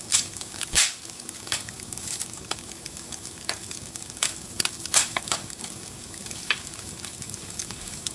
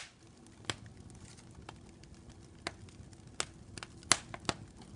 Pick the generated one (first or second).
first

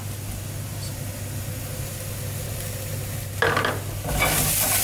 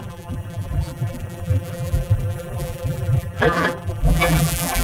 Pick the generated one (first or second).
second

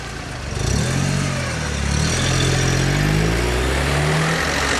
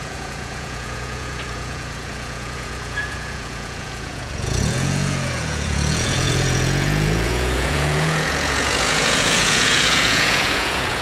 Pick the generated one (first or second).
second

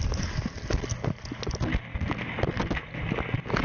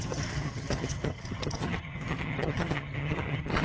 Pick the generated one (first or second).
second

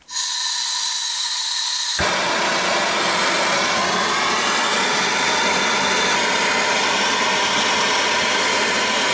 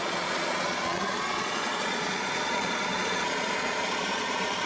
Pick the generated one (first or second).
second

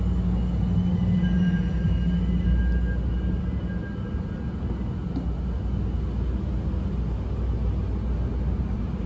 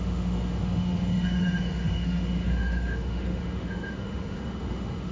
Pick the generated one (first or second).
second